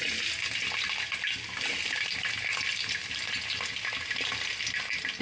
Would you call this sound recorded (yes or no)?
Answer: yes